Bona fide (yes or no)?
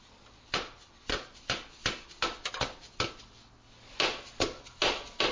yes